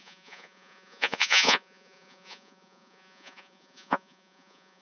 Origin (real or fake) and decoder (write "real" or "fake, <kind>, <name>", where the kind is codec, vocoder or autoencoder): fake, vocoder, Vocos